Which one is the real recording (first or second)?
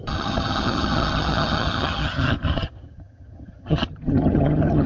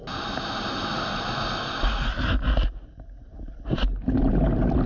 second